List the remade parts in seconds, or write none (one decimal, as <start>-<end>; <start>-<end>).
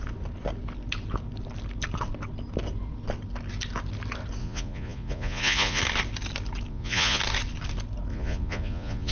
4.4-5.8; 6.7-7.2; 8.1-9.1